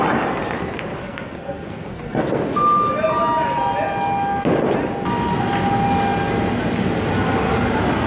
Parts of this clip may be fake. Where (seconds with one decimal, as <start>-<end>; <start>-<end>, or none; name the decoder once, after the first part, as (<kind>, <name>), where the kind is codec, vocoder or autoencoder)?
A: 1.0-2.4 (codec, SNAC)

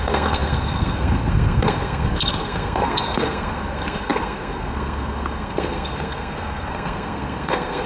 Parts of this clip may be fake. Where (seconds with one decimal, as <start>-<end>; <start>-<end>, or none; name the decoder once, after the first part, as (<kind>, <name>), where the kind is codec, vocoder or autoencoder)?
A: 0.0-7.9 (codec, SNAC)

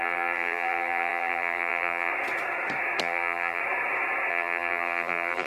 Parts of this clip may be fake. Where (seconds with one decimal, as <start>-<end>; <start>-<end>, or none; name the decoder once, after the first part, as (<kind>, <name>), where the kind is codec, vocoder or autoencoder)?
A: 0.0-2.1 (vocoder, BigVGAN v2); 3.0-3.6; 4.3-5.5

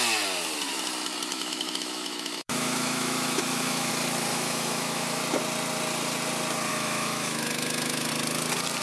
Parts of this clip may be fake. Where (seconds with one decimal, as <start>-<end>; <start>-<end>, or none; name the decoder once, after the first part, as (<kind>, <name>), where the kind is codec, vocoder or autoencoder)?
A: 1.3-3.9 (autoencoder, DAC-VAE); 4.3-5.2; 6.7-8.1

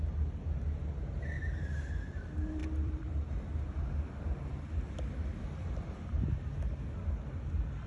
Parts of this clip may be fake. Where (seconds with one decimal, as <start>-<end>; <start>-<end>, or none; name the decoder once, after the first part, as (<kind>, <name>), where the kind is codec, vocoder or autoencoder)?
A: 2.6-3.3 (vocoder, BigVGAN v2)

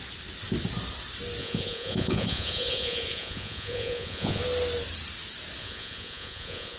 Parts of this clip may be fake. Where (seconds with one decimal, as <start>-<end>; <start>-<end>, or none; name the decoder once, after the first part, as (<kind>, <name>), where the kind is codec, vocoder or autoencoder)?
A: 1.4-4.4 (vocoder, Vocos); 5.6-6.8

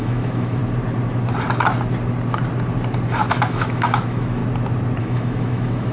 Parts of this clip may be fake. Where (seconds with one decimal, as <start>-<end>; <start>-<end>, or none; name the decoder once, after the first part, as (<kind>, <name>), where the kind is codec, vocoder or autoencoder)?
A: 0.0-0.6 (autoencoder, DAC-VAE); 3.3-4.4; 5.0-5.9

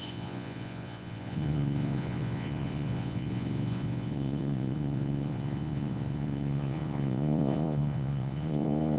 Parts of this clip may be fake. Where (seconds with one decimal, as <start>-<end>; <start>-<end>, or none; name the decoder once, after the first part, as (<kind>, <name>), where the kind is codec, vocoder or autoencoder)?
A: 0.0-9.0 (vocoder, Vocos)